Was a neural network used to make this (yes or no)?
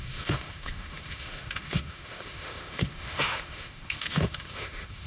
yes